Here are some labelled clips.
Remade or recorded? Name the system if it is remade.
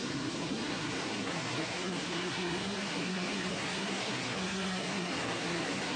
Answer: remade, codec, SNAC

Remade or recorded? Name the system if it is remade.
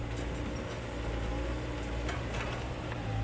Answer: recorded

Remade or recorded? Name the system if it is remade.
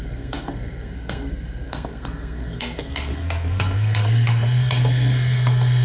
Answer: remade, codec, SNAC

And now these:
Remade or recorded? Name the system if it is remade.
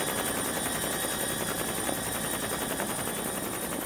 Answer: recorded